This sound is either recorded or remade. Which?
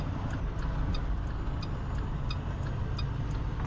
recorded